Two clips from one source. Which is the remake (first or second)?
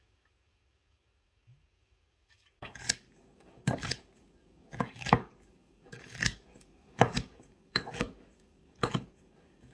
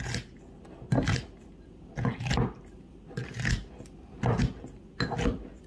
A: first